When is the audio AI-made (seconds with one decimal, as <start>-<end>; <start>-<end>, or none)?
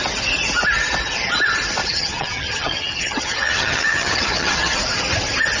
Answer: 1.8-4.8